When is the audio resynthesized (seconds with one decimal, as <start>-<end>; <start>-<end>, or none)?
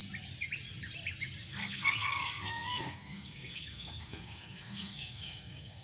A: 1.5-5.8